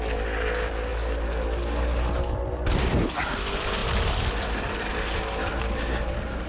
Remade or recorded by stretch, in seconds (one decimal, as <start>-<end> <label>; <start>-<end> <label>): 0.0-6.5 recorded